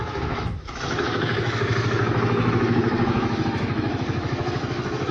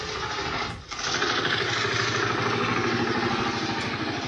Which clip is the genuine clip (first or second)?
second